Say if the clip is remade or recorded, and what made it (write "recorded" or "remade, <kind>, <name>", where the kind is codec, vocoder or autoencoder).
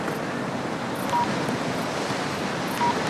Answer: recorded